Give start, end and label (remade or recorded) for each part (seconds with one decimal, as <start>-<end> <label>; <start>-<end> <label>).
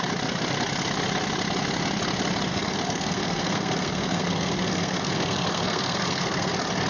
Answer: 0.0-2.5 recorded; 2.5-6.5 remade; 6.5-6.9 recorded